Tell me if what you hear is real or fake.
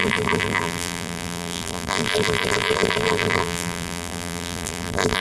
fake